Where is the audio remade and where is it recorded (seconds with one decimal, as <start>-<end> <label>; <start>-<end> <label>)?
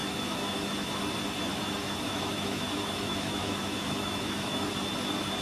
0.0-1.0 remade; 1.0-1.5 recorded; 1.5-4.7 remade; 4.7-5.4 recorded